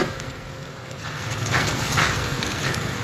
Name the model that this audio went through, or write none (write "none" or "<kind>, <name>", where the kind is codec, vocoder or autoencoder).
codec, SNAC